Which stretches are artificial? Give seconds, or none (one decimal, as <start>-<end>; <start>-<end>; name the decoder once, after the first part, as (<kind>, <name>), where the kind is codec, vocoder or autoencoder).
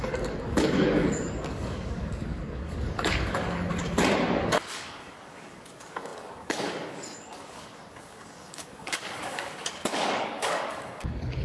0.0-3.7 (codec, DAC); 4.3-11.4